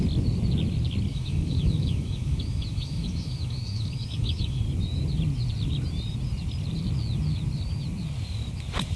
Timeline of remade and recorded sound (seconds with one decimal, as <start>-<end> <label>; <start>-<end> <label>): 0.0-1.1 recorded; 1.1-4.6 remade; 4.6-9.0 recorded